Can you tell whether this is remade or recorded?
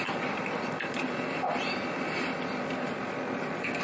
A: recorded